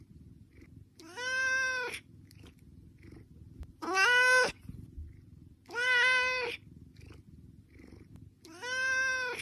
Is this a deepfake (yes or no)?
no